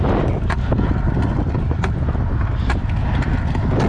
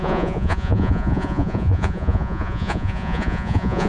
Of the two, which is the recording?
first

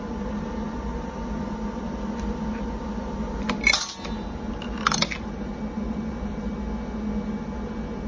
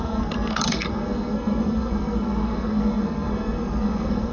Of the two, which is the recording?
first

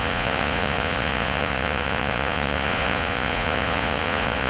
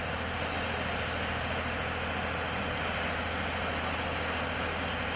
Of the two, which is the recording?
second